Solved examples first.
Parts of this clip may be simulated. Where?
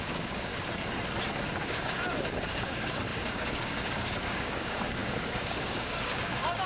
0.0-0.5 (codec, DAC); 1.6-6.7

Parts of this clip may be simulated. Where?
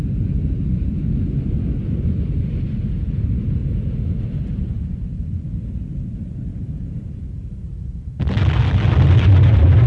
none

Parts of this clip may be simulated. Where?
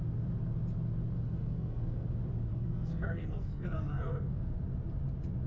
1.4-2.1 (codec, SNAC); 2.5-4.4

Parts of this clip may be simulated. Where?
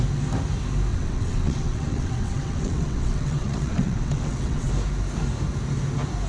0.9-4.7 (vocoder, WaveNeXt)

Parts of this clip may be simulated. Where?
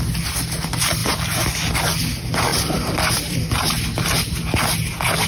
2.5-3.8 (vocoder, BigVGAN v2)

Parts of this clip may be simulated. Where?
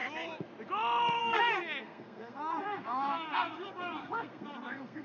1.2-5.0 (codec, SNAC)